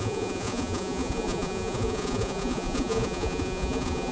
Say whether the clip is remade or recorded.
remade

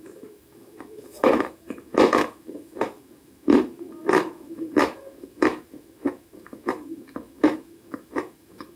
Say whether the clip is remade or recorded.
remade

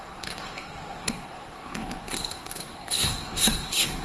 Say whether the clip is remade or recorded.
remade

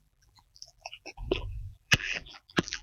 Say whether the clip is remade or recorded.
remade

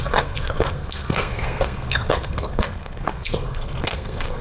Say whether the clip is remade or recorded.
remade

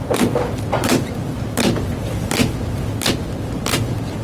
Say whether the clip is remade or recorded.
remade